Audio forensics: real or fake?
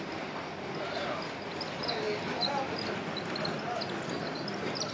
real